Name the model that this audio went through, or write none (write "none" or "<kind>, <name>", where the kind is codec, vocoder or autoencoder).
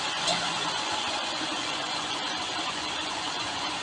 vocoder, Vocos